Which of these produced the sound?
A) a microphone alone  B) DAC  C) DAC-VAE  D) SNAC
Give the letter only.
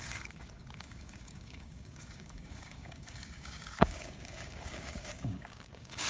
B